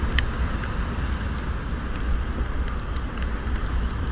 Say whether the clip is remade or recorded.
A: recorded